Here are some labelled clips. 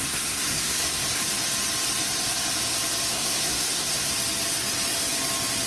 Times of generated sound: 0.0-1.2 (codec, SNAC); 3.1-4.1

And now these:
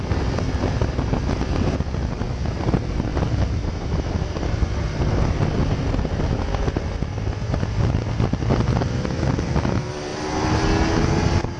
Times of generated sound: none